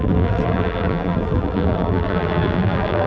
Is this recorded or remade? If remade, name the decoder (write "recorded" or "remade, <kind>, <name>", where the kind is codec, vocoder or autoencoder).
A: remade, vocoder, BigVGAN v2